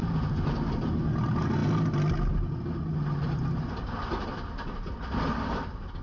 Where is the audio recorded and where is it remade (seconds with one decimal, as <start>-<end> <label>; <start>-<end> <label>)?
0.0-6.0 recorded